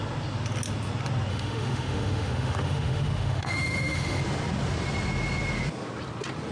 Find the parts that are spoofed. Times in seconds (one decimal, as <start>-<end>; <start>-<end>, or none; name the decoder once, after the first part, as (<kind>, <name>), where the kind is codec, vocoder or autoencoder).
1.3-4.2 (autoencoder, DAC-VAE)